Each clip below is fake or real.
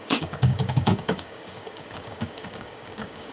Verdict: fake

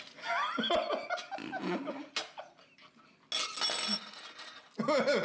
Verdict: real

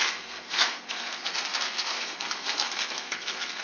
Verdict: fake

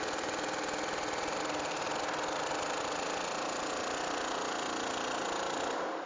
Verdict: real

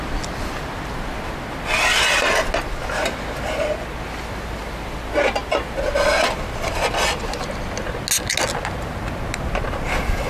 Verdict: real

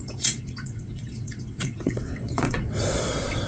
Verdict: fake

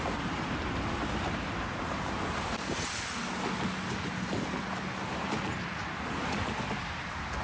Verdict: real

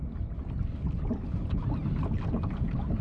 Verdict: real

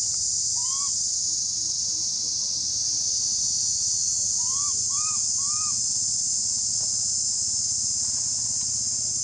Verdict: real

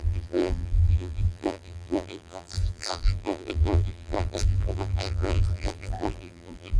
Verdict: fake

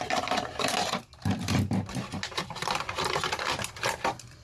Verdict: real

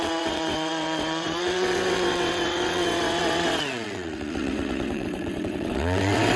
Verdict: fake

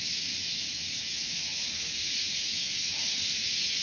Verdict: fake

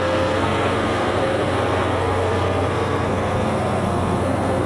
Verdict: fake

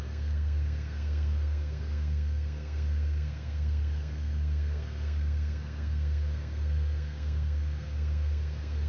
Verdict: fake